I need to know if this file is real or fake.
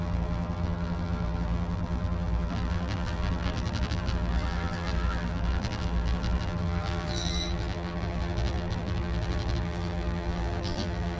fake